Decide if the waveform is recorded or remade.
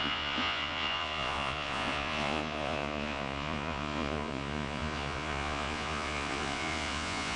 remade